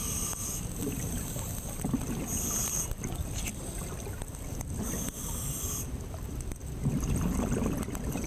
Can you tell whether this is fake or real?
real